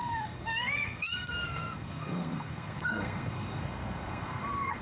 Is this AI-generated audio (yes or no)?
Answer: yes